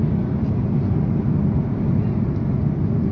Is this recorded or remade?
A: recorded